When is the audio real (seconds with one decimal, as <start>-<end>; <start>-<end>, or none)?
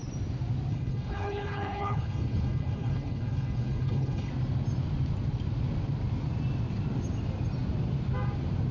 0.0-0.7; 4.3-8.7